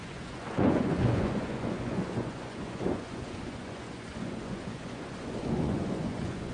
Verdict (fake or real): fake